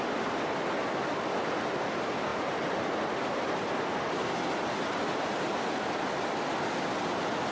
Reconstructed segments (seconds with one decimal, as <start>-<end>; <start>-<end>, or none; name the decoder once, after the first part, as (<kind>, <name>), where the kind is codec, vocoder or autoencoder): none